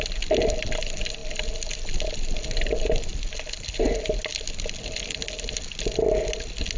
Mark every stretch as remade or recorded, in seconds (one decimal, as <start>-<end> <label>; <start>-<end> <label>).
0.0-6.8 recorded